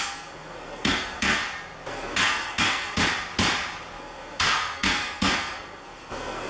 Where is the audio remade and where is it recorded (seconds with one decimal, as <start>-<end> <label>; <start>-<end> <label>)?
0.0-1.4 remade; 1.4-1.9 recorded; 1.9-3.0 remade; 3.0-4.0 recorded; 4.0-6.5 remade